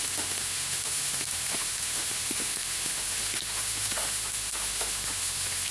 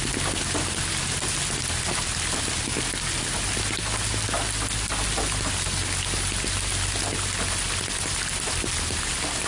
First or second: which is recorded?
second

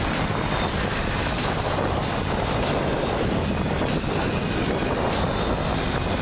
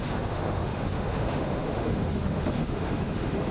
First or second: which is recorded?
first